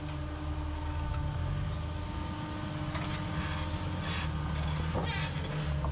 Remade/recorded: recorded